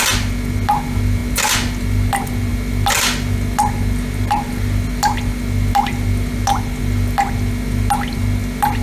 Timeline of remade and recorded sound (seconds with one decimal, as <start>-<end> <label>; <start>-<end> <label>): 0.0-8.8 recorded